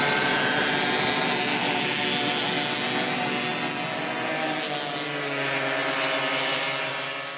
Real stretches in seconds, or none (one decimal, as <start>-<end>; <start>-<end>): 0.0-7.4